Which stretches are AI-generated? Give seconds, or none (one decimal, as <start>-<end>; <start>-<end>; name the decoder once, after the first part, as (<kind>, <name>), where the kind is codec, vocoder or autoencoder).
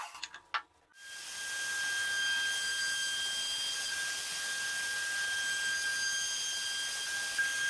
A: none